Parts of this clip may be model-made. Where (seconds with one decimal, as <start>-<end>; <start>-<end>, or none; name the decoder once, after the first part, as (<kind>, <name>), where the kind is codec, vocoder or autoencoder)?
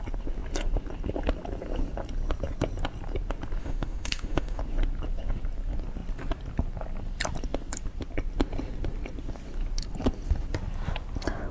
3.6-4.6 (autoencoder, DAC-VAE)